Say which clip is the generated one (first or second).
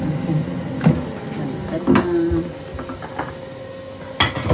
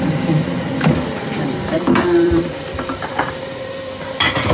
second